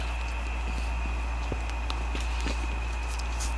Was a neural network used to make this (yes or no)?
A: no